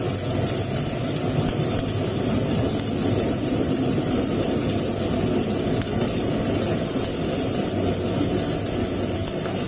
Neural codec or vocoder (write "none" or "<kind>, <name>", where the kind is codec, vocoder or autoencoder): none